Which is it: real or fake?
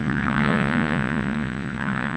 fake